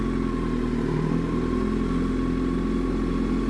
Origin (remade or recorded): recorded